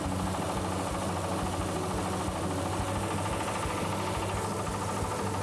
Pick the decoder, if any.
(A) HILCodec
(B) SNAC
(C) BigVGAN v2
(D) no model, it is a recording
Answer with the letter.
D